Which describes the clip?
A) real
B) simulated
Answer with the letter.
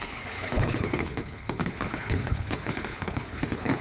B